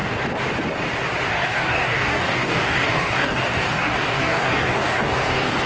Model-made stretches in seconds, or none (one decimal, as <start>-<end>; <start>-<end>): 1.3-5.7

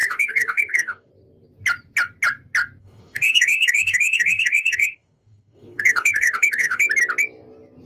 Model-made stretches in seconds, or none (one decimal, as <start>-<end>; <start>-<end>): 0.0-1.1; 2.8-6.8

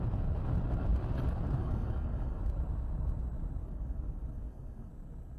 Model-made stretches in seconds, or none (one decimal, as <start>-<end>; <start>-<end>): 1.6-2.4; 3.6-4.9